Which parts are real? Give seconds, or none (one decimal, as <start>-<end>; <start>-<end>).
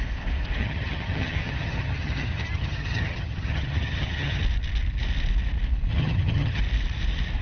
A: 0.0-0.6; 4.4-5.9; 6.6-7.4